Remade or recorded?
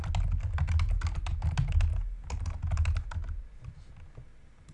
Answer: recorded